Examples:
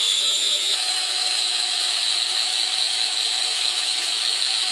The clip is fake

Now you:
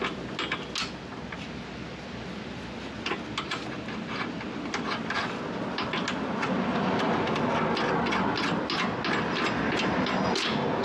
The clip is real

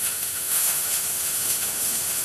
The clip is fake